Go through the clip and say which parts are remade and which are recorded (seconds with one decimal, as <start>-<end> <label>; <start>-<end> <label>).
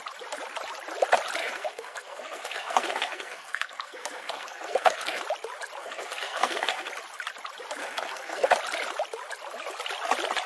0.0-1.4 recorded; 1.4-5.2 remade; 5.2-5.8 recorded; 5.8-6.9 remade; 6.9-7.8 recorded; 7.8-8.5 remade; 8.5-10.5 recorded